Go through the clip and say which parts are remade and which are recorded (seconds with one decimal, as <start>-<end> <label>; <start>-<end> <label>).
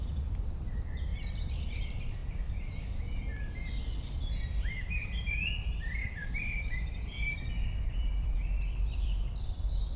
0.0-10.0 remade